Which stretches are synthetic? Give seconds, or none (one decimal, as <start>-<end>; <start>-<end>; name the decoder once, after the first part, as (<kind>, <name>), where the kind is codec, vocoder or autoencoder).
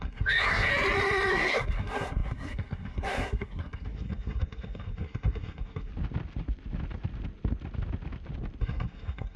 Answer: 0.0-0.7 (codec, SNAC); 1.3-5.9; 8.6-9.4